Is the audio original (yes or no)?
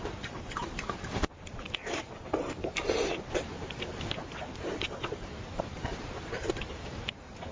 no